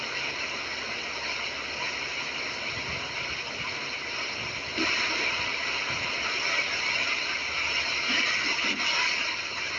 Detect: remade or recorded recorded